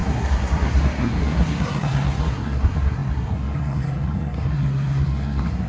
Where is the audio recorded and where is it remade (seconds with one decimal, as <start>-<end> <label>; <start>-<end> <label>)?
0.0-5.7 remade